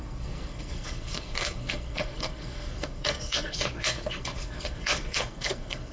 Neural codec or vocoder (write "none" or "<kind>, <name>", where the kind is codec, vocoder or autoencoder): codec, SNAC